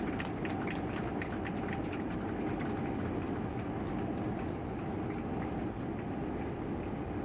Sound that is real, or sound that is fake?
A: real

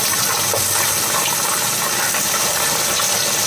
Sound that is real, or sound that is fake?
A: real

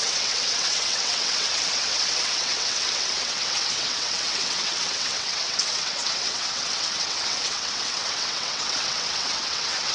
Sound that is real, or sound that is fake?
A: fake